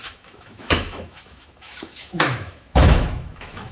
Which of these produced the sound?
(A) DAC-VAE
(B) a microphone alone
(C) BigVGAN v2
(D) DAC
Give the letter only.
A